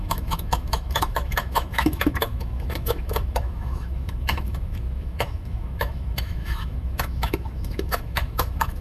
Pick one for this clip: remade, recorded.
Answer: remade